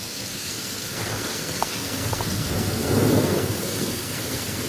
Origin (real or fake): fake